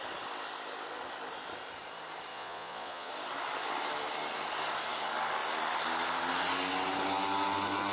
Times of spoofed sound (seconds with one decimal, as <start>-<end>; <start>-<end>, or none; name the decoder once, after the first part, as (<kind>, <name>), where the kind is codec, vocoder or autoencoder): 2.3-3.1 (vocoder, Vocos)